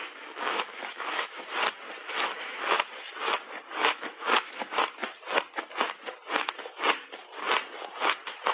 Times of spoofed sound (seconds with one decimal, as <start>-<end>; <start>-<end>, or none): 0.0-1.4; 2.0-2.9; 3.8-4.7